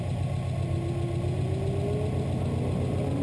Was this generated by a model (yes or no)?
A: no